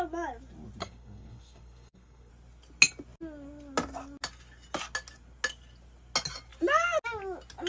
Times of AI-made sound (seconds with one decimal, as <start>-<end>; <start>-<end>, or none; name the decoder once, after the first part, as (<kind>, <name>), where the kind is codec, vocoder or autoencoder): 0.8-2.3 (codec, SNAC)